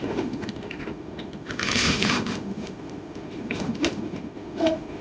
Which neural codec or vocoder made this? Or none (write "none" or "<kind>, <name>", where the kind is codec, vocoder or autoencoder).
autoencoder, DAC-VAE